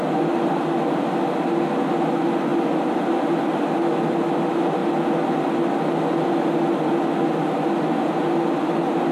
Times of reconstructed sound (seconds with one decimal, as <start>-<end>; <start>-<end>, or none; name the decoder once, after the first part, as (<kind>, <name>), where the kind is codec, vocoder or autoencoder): none